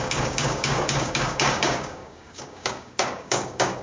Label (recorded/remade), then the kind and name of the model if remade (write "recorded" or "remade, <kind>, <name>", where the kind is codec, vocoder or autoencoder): remade, codec, DAC